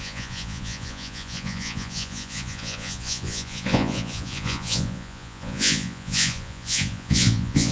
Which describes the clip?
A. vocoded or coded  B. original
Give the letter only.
A